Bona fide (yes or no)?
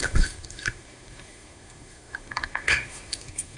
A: no